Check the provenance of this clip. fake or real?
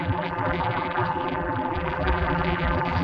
fake